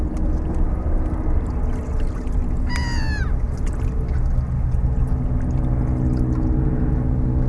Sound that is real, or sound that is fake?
real